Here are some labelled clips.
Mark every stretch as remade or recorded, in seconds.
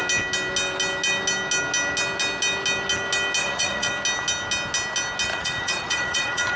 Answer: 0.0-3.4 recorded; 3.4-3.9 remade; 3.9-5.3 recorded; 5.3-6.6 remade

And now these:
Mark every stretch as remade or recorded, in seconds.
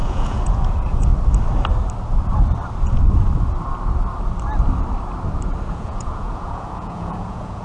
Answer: 0.0-1.1 remade; 1.1-5.7 recorded; 5.7-7.6 remade